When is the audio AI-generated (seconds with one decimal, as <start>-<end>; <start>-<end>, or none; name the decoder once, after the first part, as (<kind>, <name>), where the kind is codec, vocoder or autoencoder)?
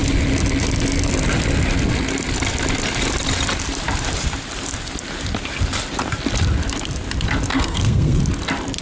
7.5-8.2 (codec, SNAC)